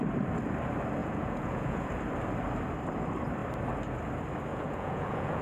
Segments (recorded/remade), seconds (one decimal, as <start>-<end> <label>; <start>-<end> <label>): 0.0-1.0 recorded; 1.0-1.9 remade; 1.9-4.5 recorded; 4.5-5.4 remade